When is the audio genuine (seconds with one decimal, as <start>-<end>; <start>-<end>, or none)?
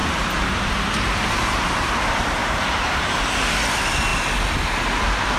1.9-2.4; 3.4-5.4